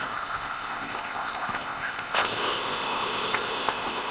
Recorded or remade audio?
remade